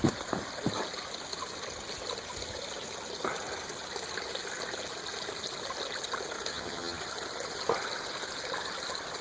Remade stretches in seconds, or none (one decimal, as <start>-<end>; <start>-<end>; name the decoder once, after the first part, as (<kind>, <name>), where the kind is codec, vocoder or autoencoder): 6.5-7.0 (vocoder, HiFi-GAN)